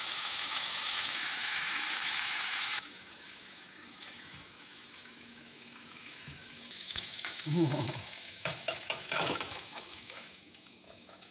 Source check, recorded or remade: remade